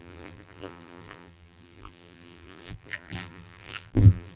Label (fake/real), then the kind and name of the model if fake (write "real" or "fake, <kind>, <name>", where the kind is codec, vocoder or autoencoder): fake, vocoder, BigVGAN v2